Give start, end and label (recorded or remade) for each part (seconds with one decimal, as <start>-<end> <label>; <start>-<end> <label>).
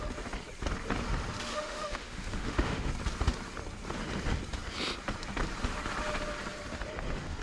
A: 0.0-1.5 recorded; 1.5-2.9 remade; 2.9-7.4 recorded